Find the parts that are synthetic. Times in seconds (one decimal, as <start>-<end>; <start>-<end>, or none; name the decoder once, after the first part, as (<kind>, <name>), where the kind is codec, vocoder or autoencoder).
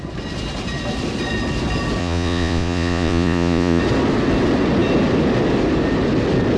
2.0-3.8 (vocoder, Vocos)